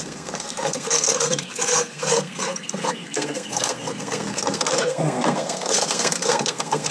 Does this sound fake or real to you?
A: fake